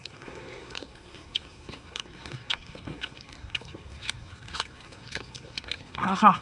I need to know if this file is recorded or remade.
remade